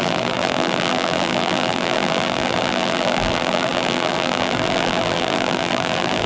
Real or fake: fake